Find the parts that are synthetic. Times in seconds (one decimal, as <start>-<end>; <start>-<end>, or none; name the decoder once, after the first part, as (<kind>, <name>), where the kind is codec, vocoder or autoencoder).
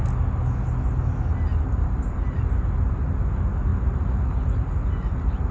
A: 1.5-2.4 (vocoder, BigVGAN v2)